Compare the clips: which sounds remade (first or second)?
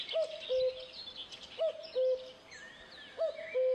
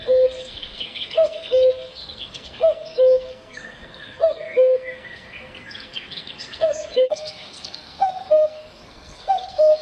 second